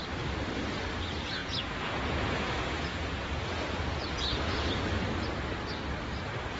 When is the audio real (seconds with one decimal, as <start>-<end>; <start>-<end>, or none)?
0.0-1.4; 4.7-6.6